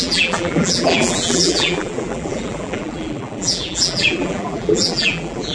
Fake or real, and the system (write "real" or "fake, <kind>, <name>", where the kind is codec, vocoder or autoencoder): fake, vocoder, BigVGAN v2